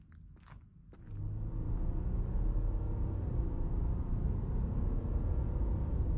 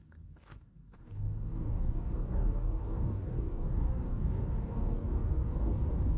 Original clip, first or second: first